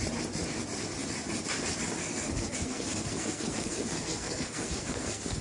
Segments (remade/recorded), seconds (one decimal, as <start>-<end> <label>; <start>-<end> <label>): 0.0-2.0 recorded; 2.0-5.4 remade